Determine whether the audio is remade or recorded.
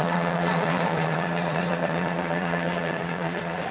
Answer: remade